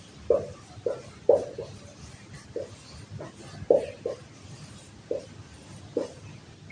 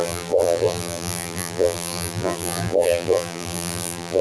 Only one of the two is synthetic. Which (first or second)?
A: second